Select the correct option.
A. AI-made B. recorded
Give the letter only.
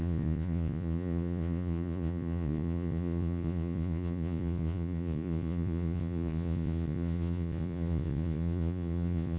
A